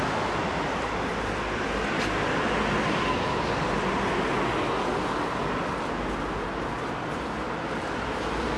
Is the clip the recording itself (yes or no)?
yes